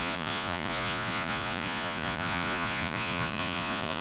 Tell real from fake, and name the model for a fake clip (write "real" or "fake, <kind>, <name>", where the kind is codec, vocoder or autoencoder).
fake, vocoder, Vocos